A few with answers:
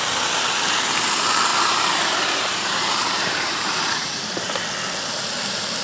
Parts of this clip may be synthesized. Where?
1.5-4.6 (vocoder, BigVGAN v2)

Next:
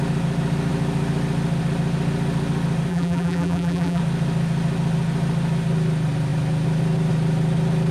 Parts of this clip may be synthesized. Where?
2.9-4.0 (vocoder, BigVGAN v2)

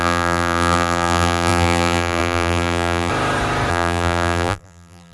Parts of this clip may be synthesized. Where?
0.0-3.1 (vocoder, BigVGAN v2); 3.7-5.1